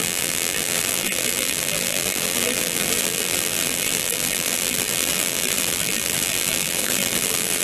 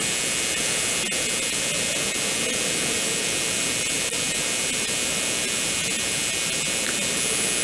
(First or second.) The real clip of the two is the second